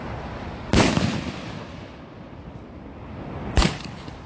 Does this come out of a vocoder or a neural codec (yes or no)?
no